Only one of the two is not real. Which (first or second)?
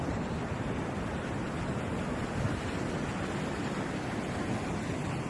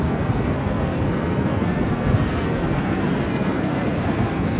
second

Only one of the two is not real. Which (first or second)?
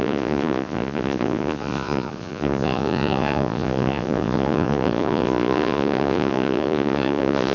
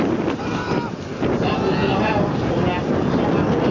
first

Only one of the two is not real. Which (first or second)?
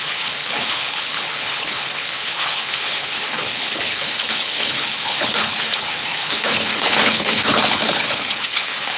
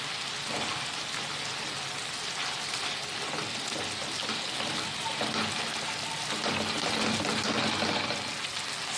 first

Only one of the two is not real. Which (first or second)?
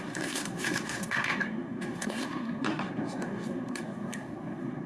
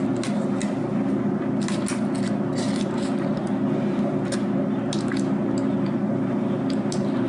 first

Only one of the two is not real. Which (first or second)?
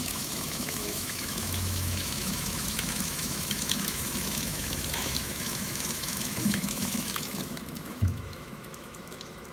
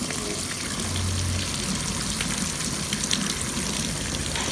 first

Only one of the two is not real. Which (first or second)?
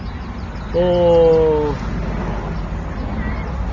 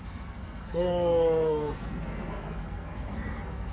second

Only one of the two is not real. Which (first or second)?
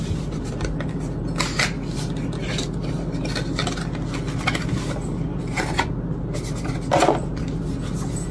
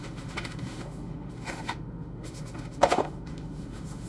second